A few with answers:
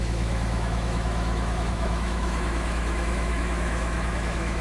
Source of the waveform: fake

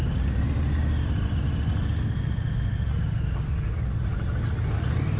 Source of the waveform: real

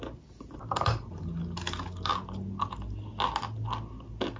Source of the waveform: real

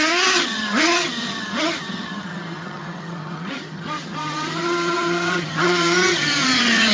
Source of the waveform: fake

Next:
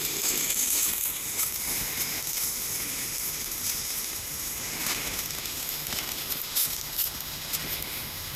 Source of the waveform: fake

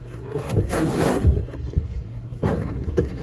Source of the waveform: fake